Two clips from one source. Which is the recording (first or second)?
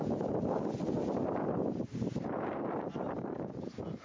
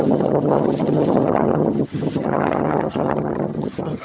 first